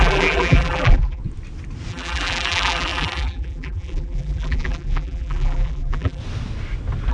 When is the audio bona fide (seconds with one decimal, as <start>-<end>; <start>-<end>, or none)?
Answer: 1.2-1.9; 6.2-7.1